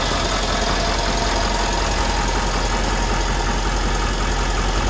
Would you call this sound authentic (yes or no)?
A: yes